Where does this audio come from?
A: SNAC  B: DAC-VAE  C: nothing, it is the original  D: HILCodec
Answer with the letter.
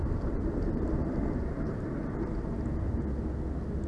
C